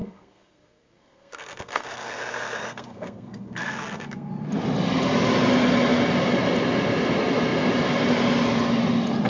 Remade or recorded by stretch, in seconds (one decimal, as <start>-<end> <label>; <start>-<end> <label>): 0.0-4.3 remade; 4.3-9.3 recorded